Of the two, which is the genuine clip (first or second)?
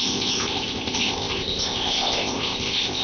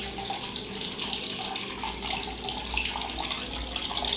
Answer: second